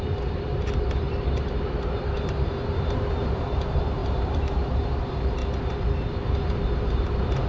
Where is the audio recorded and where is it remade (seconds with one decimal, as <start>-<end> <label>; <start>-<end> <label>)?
0.0-5.4 remade; 5.4-6.1 recorded; 6.1-7.5 remade